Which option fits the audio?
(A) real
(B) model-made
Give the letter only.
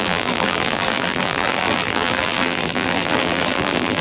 B